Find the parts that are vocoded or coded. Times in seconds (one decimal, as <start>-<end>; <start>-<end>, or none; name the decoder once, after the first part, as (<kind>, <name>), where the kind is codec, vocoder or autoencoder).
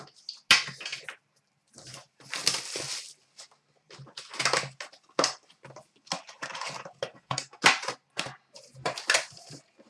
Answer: 7.1-7.6 (codec, SNAC)